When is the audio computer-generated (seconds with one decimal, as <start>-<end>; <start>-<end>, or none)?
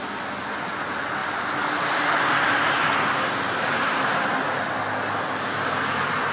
none